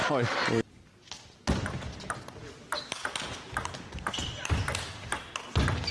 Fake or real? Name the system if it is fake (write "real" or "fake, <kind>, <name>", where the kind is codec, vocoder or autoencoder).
real